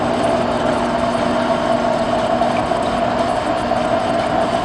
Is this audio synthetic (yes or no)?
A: no